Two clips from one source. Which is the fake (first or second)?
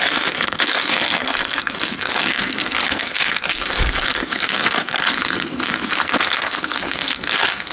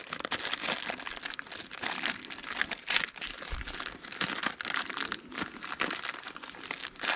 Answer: first